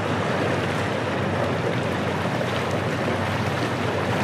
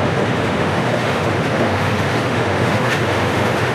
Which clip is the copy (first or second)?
second